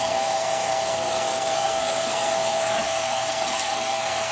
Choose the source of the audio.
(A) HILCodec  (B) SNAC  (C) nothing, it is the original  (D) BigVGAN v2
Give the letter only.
B